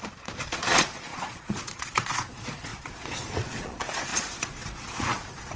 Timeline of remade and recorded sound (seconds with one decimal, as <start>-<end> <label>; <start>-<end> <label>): 0.0-5.6 remade